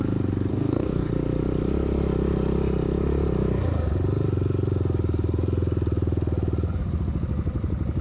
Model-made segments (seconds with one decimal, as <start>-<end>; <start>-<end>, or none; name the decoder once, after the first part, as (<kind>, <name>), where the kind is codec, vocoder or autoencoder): 0.5-1.1 (codec, DAC)